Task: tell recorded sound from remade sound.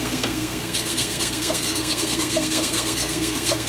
remade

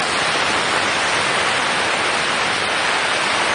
recorded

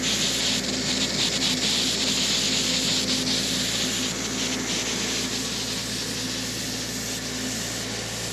recorded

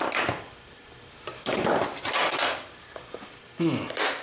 recorded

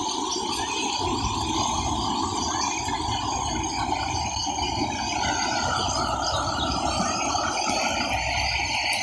recorded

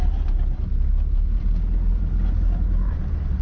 recorded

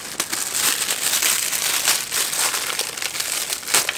recorded